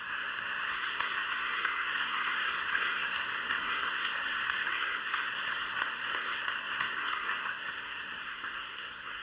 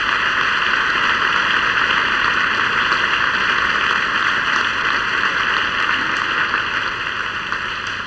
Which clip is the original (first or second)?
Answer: second